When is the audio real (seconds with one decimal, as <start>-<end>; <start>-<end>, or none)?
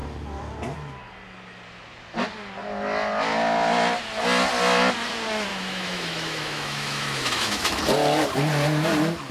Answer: 0.0-5.5; 7.8-9.3